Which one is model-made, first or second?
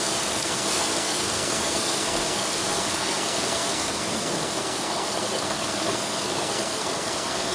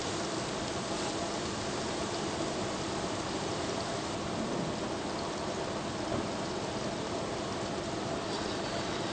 first